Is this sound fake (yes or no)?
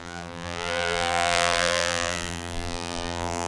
yes